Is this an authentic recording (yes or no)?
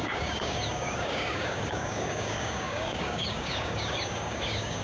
no